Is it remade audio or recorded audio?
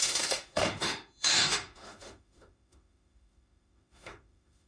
remade